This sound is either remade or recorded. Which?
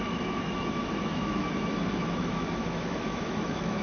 remade